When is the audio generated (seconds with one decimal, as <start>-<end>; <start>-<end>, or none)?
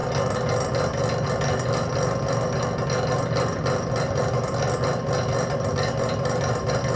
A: none